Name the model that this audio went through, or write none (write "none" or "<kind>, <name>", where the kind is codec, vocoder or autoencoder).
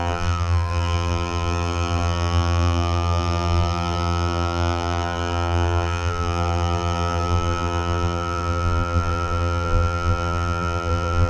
vocoder, BigVGAN v2